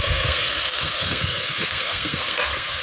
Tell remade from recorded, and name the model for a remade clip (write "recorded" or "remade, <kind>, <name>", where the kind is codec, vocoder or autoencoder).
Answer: remade, codec, SNAC